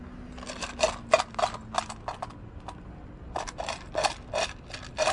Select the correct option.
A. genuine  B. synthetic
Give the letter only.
A